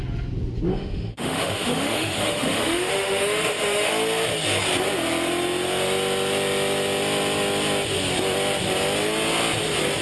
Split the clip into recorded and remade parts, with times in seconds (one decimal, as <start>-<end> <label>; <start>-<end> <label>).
0.0-0.7 recorded; 0.7-3.9 remade; 3.9-10.0 recorded